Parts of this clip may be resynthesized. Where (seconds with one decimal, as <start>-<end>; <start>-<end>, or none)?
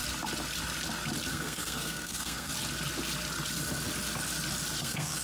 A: 1.3-2.5; 4.8-5.2